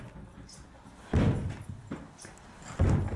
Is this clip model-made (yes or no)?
no